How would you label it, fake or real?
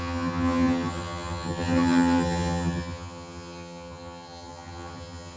fake